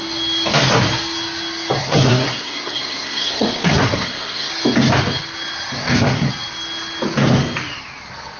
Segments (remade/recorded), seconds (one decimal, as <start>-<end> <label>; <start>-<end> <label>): 0.0-1.8 recorded; 1.8-4.5 remade; 4.5-5.8 recorded; 5.8-6.3 remade; 6.3-8.4 recorded

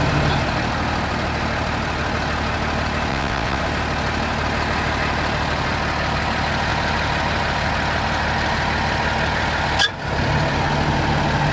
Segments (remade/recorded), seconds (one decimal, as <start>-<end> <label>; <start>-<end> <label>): 0.0-3.1 recorded; 3.1-3.6 remade; 3.6-11.5 recorded

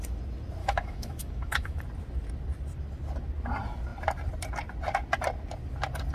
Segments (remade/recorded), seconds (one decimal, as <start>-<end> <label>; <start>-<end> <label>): 0.0-0.6 recorded; 0.6-1.8 remade; 1.8-6.1 recorded

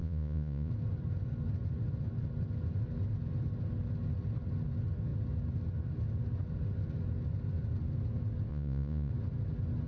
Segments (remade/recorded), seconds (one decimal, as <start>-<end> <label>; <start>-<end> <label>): 0.0-0.7 remade; 0.7-8.5 recorded; 8.5-9.1 remade; 9.1-9.9 recorded

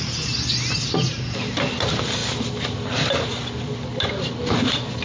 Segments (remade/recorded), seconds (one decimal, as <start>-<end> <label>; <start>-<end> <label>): 0.0-5.0 recorded

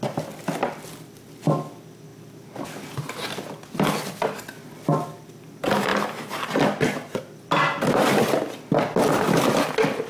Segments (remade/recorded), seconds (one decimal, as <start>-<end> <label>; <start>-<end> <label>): 0.0-10.1 recorded

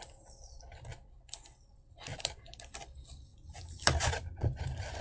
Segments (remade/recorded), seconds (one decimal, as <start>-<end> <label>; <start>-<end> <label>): 0.0-0.9 recorded; 0.9-1.7 remade; 1.7-2.1 recorded; 2.1-2.8 remade; 2.8-3.3 recorded; 3.3-4.6 remade; 4.6-5.0 recorded

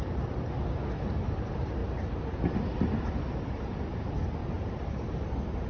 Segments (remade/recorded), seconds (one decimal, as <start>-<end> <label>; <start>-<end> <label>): 0.0-4.4 recorded; 4.4-5.3 remade; 5.3-5.7 recorded